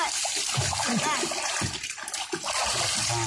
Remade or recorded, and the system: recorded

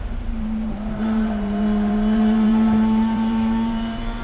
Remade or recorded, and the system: remade, vocoder, BigVGAN v2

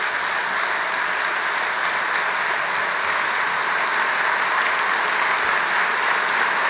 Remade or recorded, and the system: recorded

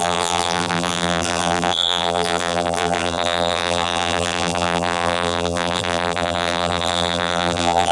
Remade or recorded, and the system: remade, vocoder, BigVGAN v2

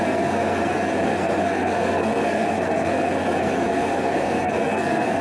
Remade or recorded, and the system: remade, codec, SNAC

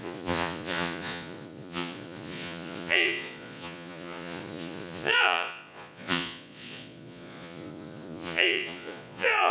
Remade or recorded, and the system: remade, vocoder, Vocos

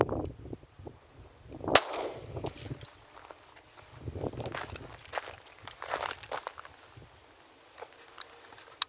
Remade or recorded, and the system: recorded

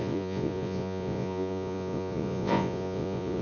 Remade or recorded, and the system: remade, vocoder, Vocos